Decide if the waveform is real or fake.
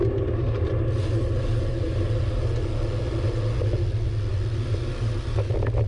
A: real